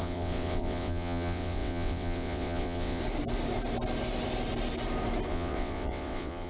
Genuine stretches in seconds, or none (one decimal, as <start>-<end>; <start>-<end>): 3.0-5.3